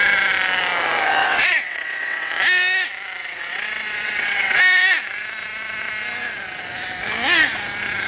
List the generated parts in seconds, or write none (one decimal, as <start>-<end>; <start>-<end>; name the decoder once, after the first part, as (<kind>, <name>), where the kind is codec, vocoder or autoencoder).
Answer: 1.2-2.3 (vocoder, WaveNeXt); 3.2-4.6